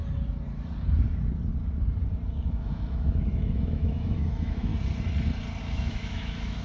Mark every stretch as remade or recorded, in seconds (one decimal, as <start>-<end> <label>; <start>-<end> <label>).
0.0-2.5 recorded; 2.5-4.7 remade; 4.7-5.6 recorded; 5.6-6.6 remade

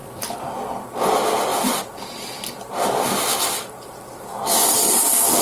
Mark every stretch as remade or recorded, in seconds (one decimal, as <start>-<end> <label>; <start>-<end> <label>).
0.0-1.0 remade; 1.0-1.5 recorded; 1.5-4.7 remade; 4.7-5.4 recorded

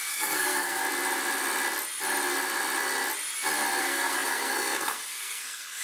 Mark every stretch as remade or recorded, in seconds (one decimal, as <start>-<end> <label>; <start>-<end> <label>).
0.0-0.8 remade; 0.8-3.8 recorded; 3.8-5.8 remade

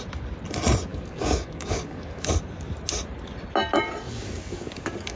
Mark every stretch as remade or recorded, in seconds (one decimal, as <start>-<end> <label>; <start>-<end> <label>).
0.0-0.9 recorded; 0.9-2.3 remade; 2.3-4.1 recorded; 4.1-5.2 remade

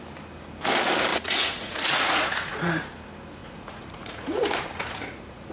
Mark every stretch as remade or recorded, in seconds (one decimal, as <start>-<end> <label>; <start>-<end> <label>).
0.0-1.1 recorded; 1.1-2.8 remade; 2.8-3.4 recorded; 3.4-5.5 remade